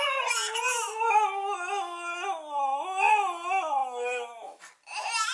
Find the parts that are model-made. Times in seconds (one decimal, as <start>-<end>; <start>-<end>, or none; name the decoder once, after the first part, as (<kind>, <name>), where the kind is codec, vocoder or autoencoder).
3.8-4.6 (autoencoder, DAC-VAE)